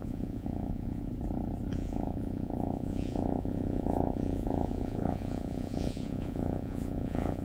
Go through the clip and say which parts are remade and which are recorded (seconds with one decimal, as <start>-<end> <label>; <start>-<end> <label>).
0.0-1.1 remade; 1.1-1.7 recorded; 1.7-7.4 remade